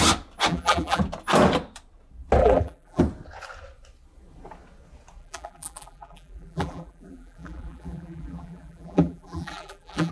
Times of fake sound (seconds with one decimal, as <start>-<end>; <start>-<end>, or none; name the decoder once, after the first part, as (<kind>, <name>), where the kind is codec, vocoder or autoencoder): 0.5-1.0 (vocoder, BigVGAN v2); 2.4-3.0; 5.2-10.1